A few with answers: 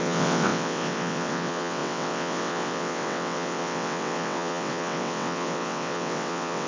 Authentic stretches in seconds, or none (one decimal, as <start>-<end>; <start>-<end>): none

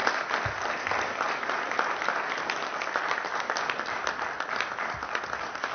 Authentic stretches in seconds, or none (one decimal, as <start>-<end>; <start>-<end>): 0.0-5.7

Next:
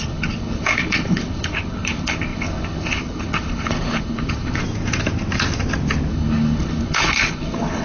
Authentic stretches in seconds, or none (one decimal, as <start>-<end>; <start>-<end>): 4.6-6.1

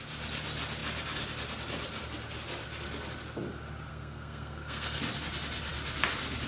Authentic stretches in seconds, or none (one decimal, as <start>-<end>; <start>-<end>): 0.0-3.9; 5.0-6.5

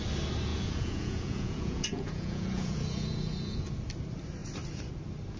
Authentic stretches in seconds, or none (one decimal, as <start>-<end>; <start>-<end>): 0.0-0.5; 3.7-5.4

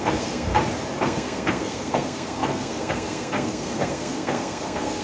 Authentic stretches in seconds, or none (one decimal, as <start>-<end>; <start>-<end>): 0.5-1.0